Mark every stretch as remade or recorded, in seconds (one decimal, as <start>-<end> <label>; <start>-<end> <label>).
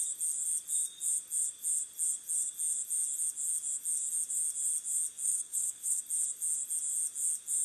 0.0-5.2 recorded; 5.2-6.0 remade; 6.0-7.6 recorded